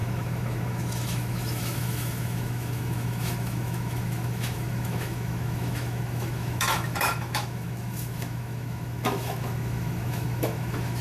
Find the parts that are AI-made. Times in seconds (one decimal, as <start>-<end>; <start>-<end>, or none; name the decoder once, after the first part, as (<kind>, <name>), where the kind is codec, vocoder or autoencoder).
0.0-11.0 (autoencoder, DAC-VAE)